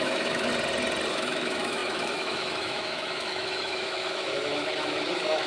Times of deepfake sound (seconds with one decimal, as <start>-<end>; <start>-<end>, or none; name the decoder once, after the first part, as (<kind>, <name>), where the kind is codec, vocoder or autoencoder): 0.0-0.5 (autoencoder, DAC-VAE); 1.1-5.5